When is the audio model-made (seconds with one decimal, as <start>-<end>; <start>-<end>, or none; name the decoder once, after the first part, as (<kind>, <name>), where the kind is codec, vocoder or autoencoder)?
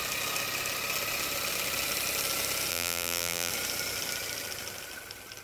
2.7-3.5 (vocoder, BigVGAN v2)